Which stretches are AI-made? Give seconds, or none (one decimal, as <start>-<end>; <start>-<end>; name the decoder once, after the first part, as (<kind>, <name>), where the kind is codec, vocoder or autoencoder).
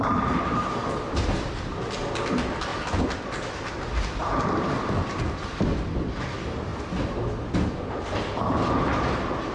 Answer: none